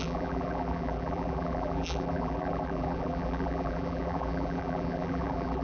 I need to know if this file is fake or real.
fake